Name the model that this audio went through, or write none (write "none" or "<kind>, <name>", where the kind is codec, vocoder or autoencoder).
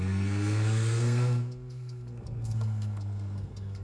codec, SNAC